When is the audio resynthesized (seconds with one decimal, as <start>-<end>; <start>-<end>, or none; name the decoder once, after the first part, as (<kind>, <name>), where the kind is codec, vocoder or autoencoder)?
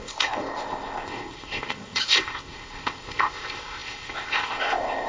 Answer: 0.0-5.1 (codec, ZipCodec)